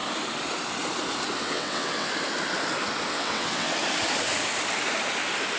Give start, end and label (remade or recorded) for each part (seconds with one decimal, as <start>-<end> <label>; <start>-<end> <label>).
0.0-1.4 recorded; 1.4-2.1 remade; 2.1-3.1 recorded; 3.1-3.7 remade; 3.7-5.6 recorded